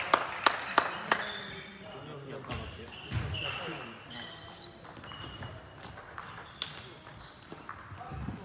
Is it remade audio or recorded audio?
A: recorded